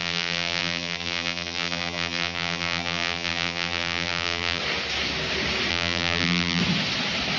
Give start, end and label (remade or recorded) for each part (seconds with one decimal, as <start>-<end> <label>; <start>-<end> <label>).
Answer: 0.0-4.6 remade; 4.6-5.7 recorded; 5.7-6.6 remade; 6.6-7.4 recorded